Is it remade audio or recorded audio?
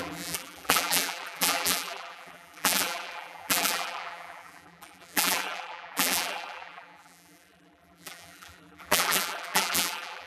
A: remade